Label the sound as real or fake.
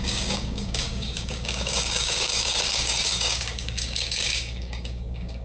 fake